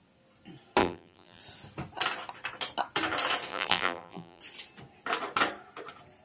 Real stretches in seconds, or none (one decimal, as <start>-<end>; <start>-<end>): 0.0-0.8; 1.4-3.5; 4.4-6.2

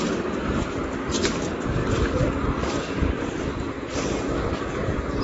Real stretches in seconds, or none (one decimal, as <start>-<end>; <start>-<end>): 0.0-5.2

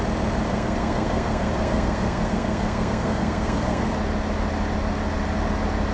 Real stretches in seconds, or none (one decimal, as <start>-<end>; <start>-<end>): 0.0-0.5; 3.9-5.9